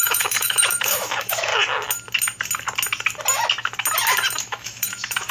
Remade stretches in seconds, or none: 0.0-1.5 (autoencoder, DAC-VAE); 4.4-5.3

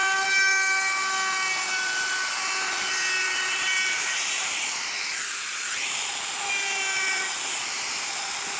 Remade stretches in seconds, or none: 5.1-7.8 (vocoder, BigVGAN v2)

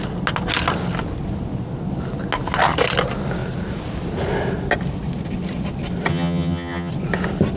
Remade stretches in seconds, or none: 6.1-6.9 (vocoder, HiFi-GAN)

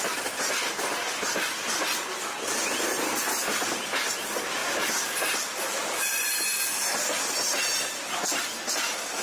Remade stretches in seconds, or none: 4.6-6.3 (vocoder, BigVGAN v2)

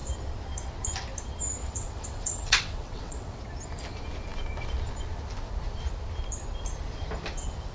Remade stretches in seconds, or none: 1.6-3.4 (vocoder, WaveNeXt)

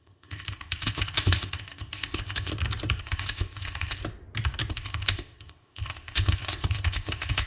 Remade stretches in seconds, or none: 0.0-2.5 (codec, ZipCodec); 3.0-4.0; 4.7-7.5